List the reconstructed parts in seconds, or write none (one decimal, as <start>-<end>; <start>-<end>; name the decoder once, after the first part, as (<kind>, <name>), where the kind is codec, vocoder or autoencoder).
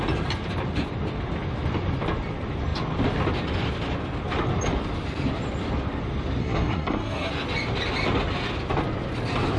6.4-7.3 (codec, SNAC)